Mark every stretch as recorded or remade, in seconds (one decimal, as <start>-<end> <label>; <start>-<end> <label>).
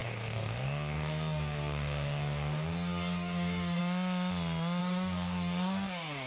0.0-3.8 remade; 3.8-4.8 recorded; 4.8-6.3 remade